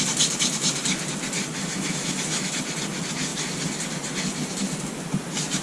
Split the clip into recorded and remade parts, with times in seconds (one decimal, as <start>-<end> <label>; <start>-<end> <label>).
0.0-1.6 recorded; 1.6-2.6 remade; 2.6-5.6 recorded